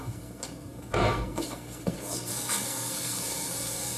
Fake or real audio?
fake